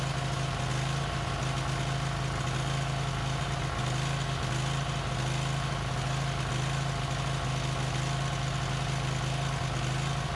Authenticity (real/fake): real